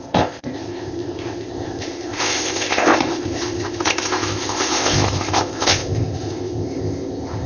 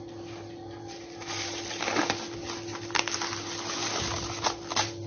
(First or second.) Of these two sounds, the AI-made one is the first